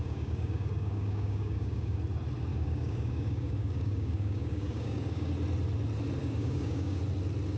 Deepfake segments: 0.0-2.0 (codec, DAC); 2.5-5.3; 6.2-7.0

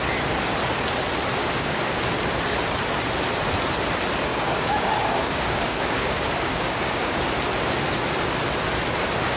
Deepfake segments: 1.4-2.0 (codec, DAC); 4.3-7.2

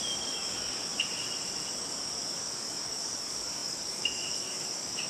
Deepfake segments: 0.0-0.9 (codec, DAC); 1.8-5.1

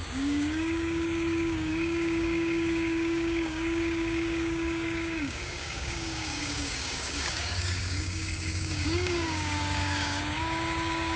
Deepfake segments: 0.0-11.2 (codec, DAC)

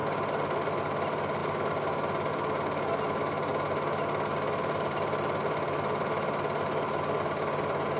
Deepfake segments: none